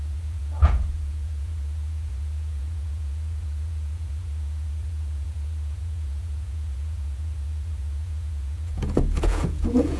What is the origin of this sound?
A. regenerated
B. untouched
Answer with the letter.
A